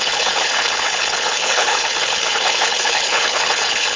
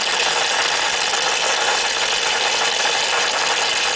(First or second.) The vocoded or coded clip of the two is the first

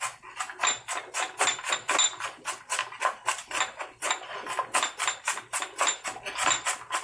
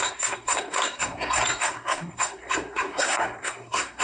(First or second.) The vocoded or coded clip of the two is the second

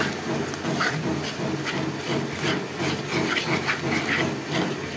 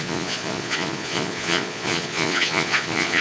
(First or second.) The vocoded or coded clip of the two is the second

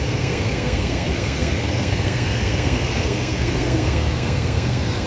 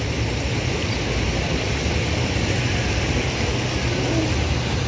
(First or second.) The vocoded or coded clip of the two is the first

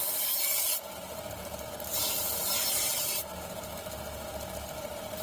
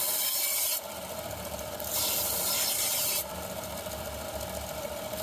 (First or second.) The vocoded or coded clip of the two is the second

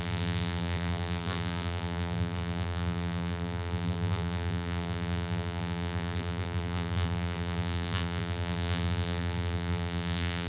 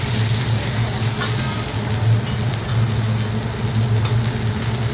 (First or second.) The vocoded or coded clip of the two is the first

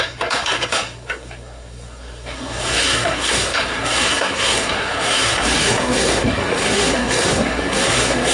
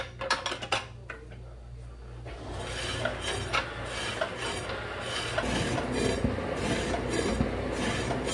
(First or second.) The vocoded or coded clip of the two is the first